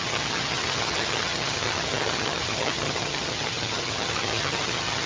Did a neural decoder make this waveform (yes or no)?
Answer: yes